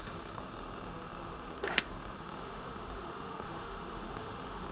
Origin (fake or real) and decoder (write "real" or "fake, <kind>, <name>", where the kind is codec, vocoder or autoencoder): fake, autoencoder, DAC-VAE